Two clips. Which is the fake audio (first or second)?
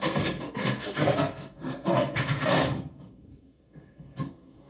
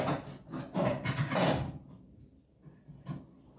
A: first